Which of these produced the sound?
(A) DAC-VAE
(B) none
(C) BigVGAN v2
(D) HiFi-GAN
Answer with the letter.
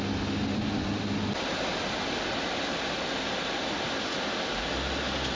B